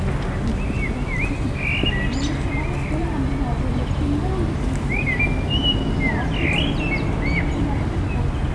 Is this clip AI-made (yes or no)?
no